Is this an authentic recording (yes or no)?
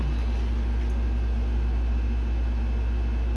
yes